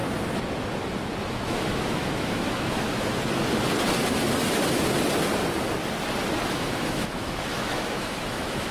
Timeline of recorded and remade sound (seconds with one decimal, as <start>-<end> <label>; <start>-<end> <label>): 0.0-1.2 recorded; 1.2-3.1 remade; 3.1-6.5 recorded; 6.5-8.7 remade